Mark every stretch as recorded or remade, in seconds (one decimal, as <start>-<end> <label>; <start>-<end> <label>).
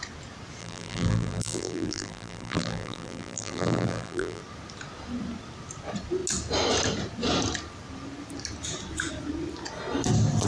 0.0-0.6 recorded; 0.6-4.4 remade; 4.4-10.5 recorded